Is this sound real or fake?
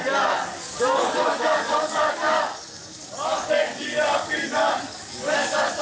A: fake